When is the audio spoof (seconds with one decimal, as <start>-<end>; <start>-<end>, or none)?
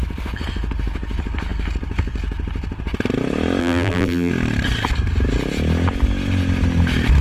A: 3.6-4.3